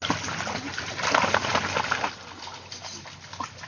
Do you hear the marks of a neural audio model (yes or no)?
no